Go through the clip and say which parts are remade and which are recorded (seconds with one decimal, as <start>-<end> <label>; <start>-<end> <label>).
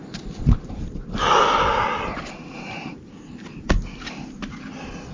0.0-5.1 recorded